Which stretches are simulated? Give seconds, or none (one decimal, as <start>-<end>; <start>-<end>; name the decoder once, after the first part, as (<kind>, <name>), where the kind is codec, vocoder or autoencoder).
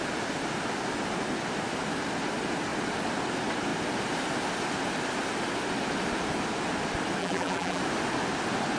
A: 7.2-7.8 (vocoder, BigVGAN v2)